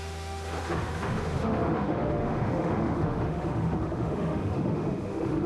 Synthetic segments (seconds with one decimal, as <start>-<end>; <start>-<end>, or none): 0.0-5.5